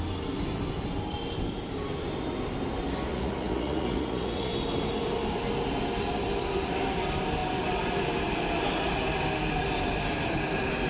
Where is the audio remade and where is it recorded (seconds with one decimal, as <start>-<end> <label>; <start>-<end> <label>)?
0.0-3.1 recorded; 3.1-4.5 remade; 4.5-10.9 recorded